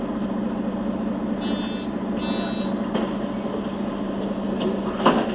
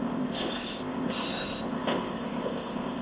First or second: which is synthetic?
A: second